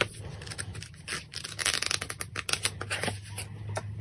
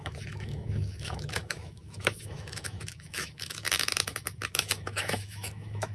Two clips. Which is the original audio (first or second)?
first